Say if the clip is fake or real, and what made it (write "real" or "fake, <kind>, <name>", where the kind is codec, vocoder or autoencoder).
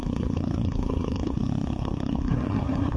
fake, codec, SNAC